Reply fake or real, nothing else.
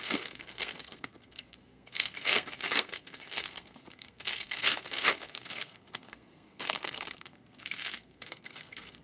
fake